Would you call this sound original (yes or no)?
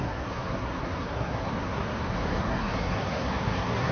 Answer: no